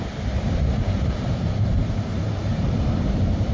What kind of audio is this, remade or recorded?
remade